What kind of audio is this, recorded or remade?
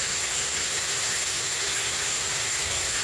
remade